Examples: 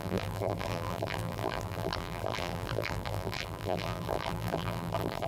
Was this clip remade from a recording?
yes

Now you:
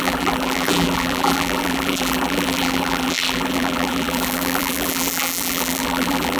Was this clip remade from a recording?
yes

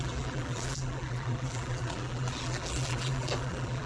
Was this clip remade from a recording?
yes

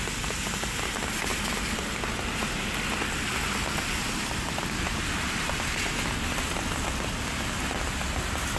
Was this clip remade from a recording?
no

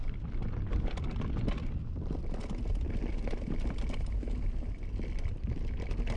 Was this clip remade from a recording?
no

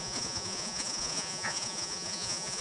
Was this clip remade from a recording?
yes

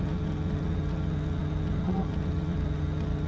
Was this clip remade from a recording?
yes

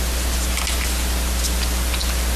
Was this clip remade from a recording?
no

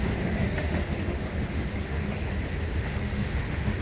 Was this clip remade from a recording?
yes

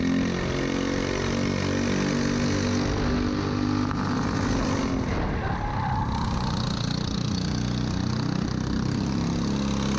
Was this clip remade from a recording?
no